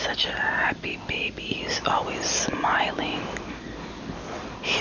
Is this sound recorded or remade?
recorded